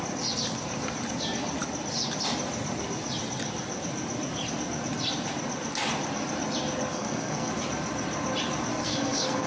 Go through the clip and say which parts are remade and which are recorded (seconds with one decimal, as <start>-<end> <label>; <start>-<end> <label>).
0.0-6.9 recorded; 6.9-7.5 remade; 7.5-8.7 recorded; 8.7-9.5 remade